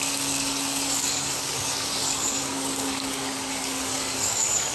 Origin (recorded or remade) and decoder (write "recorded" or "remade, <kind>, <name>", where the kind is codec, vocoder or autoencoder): remade, codec, DAC